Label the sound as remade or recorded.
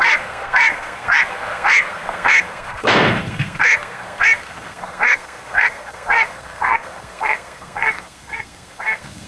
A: remade